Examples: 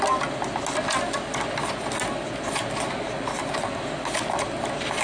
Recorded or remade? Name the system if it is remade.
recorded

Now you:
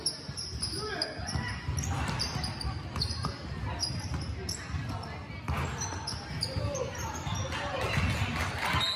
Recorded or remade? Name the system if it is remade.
recorded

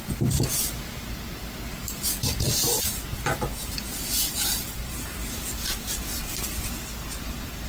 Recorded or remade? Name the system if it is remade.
recorded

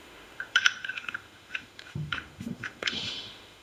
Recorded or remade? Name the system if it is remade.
remade, autoencoder, DAC-VAE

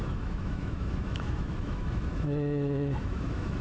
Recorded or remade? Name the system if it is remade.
remade, autoencoder, DAC-VAE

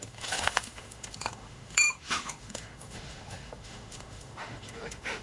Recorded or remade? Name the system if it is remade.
remade, autoencoder, DAC-VAE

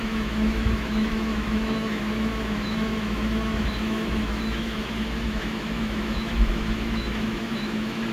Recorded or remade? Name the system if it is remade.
remade, autoencoder, DAC-VAE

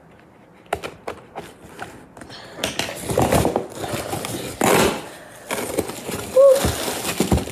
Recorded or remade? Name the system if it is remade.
recorded